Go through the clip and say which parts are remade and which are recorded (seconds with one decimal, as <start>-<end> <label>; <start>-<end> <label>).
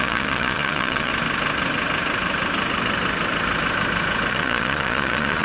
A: 0.0-1.1 remade; 1.1-4.3 recorded; 4.3-5.4 remade